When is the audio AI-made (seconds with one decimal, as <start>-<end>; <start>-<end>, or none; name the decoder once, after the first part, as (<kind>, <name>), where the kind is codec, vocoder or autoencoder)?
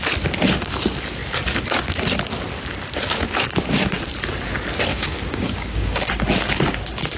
4.9-6.1 (codec, DAC)